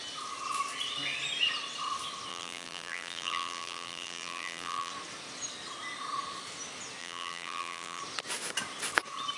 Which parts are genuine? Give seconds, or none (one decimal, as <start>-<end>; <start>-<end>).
0.0-2.3; 4.9-7.0; 8.0-9.4